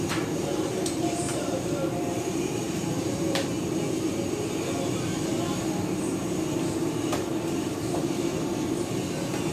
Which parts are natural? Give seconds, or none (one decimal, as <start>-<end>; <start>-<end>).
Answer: 3.5-6.7; 8.3-9.5